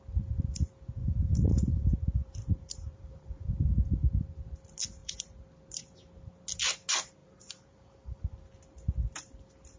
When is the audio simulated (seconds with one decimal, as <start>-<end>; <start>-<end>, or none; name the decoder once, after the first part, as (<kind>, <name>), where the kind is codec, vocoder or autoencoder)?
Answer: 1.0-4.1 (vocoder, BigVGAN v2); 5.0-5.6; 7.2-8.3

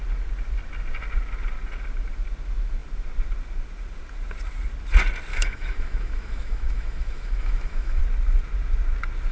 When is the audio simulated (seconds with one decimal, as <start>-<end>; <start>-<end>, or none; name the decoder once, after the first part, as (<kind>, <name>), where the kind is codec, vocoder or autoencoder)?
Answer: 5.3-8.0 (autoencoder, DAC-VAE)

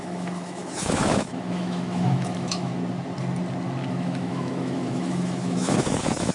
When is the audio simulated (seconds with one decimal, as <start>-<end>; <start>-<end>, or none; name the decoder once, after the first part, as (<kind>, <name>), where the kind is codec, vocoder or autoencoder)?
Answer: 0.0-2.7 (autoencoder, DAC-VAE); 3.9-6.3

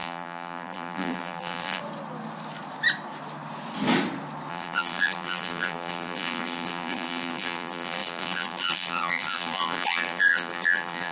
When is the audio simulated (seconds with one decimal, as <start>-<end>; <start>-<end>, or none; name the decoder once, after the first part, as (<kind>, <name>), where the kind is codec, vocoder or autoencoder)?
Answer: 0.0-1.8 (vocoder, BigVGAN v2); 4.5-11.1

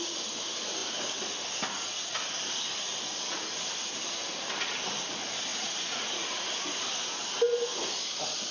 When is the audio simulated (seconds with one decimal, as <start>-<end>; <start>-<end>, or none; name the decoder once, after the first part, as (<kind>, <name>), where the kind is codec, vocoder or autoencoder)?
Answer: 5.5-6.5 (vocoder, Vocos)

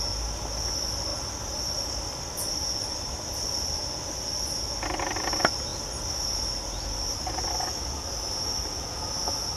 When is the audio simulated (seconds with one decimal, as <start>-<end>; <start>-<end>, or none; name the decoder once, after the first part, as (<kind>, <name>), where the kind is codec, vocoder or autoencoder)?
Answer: 5.7-6.5 (vocoder, BigVGAN v2)